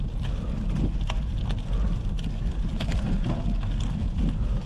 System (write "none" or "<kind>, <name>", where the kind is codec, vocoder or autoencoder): none